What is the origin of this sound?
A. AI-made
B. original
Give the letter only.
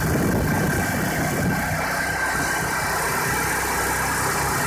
B